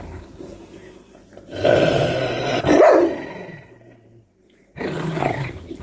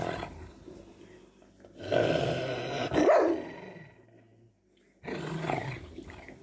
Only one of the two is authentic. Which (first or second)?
second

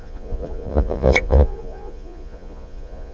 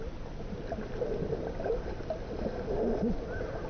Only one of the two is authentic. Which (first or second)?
second